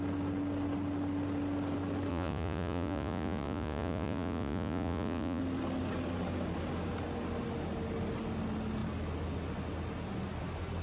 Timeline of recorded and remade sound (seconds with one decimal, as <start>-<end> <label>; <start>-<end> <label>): 0.0-2.1 recorded; 2.1-5.4 remade; 5.4-10.8 recorded